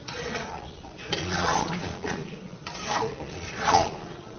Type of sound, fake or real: fake